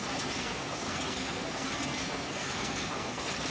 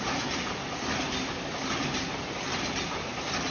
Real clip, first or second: second